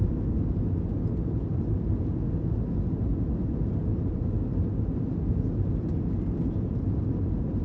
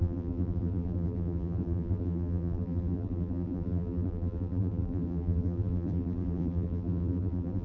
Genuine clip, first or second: first